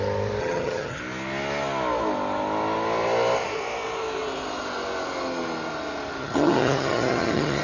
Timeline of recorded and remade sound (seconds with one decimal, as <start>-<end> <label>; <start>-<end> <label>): 0.0-0.4 recorded; 0.4-1.0 remade; 1.0-6.2 recorded; 6.2-7.6 remade